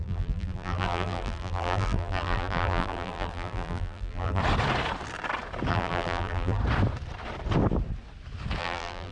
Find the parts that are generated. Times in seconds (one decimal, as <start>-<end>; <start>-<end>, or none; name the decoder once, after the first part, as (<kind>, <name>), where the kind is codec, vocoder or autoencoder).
0.0-4.4 (vocoder, BigVGAN v2); 5.7-6.6; 8.6-9.1